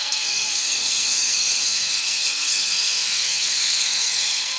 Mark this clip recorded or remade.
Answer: remade